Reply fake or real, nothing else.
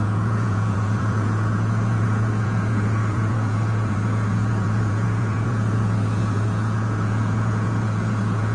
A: fake